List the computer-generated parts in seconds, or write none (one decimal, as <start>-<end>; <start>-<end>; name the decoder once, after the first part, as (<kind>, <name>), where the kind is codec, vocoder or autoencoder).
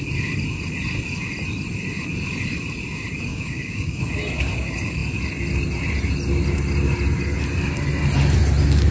3.3-4.0 (codec, DAC)